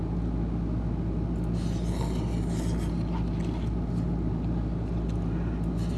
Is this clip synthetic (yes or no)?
no